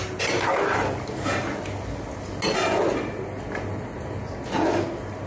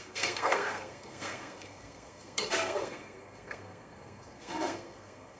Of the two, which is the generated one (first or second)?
second